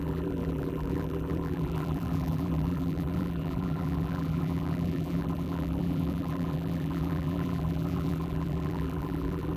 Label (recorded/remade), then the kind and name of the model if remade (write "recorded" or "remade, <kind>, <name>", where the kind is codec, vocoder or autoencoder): remade, vocoder, BigVGAN v2